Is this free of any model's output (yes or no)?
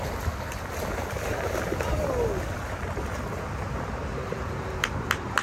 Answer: yes